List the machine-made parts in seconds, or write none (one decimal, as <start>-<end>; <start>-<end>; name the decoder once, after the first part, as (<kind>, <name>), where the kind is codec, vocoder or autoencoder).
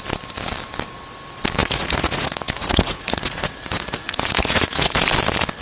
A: 1.6-5.0 (vocoder, Vocos)